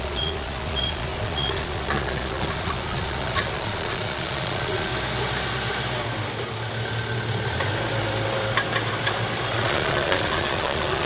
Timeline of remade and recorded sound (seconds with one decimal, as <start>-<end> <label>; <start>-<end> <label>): 0.0-4.9 remade; 4.9-9.5 recorded; 9.5-11.1 remade